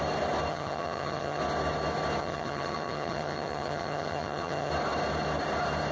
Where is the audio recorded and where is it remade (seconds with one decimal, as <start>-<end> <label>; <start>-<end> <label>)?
0.0-0.5 recorded; 0.5-1.4 remade; 1.4-2.2 recorded; 2.2-4.7 remade; 4.7-5.9 recorded